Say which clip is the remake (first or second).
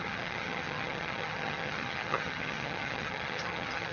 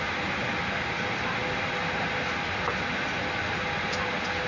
first